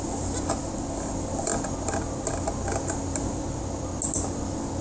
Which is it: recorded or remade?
recorded